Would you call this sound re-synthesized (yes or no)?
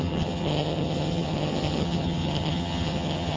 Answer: yes